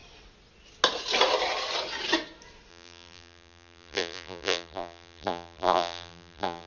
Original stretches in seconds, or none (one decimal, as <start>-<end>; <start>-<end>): 0.0-2.7